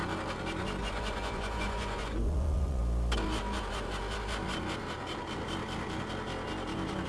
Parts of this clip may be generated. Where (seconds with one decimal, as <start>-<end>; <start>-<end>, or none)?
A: 0.8-2.8